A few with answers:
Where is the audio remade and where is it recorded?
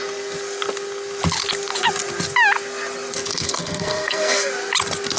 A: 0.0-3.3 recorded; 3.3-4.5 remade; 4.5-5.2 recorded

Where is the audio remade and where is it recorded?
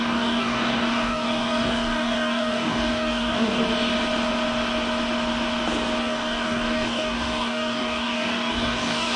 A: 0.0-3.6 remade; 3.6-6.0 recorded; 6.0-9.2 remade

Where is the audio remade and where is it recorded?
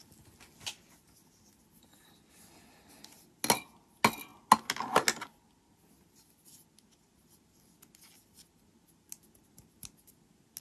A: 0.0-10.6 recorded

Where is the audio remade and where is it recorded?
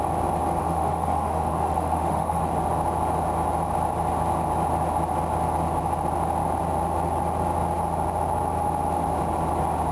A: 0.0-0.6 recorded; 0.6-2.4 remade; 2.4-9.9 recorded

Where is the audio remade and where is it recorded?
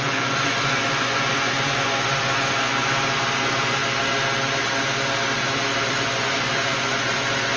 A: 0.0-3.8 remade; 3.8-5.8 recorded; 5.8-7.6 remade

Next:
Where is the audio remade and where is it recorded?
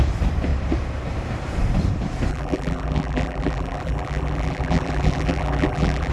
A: 0.0-2.3 recorded; 2.3-6.1 remade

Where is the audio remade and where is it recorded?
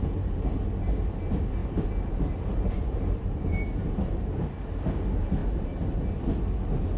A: 0.0-1.6 recorded; 1.6-4.4 remade; 4.4-7.0 recorded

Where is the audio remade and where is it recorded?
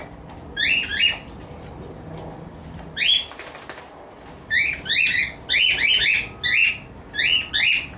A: 0.0-8.0 recorded